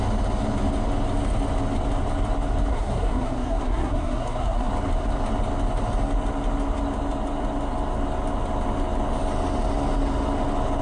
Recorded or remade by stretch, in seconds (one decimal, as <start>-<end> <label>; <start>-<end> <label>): 0.0-2.7 recorded; 2.7-4.7 remade; 4.7-10.8 recorded